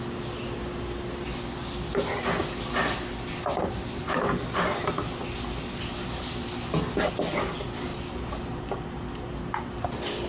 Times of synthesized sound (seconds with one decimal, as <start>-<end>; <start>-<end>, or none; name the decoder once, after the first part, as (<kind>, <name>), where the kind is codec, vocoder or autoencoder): none